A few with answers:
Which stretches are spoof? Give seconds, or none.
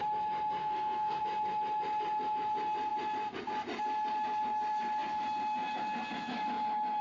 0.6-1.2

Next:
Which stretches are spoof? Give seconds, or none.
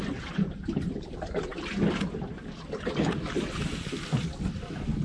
none